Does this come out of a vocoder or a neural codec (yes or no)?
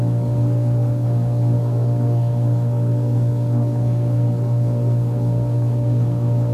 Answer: yes